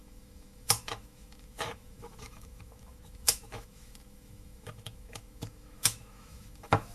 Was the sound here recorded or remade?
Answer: remade